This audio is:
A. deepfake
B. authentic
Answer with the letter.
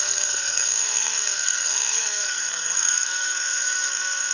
A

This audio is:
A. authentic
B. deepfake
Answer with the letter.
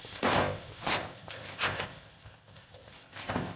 B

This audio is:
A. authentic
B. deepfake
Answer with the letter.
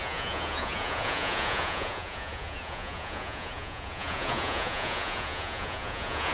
B